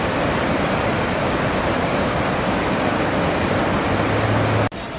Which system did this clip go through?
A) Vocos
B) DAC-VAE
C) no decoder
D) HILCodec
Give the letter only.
C